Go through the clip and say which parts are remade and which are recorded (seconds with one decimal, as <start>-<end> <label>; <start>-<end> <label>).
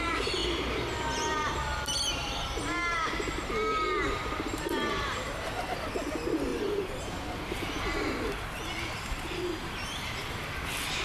0.0-4.2 recorded; 4.2-5.5 remade; 5.5-6.5 recorded; 6.5-7.1 remade; 7.1-11.0 recorded